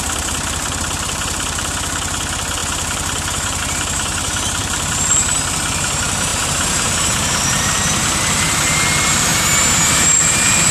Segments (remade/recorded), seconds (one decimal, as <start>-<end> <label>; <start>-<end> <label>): 0.0-9.3 remade; 9.3-9.9 recorded; 9.9-10.7 remade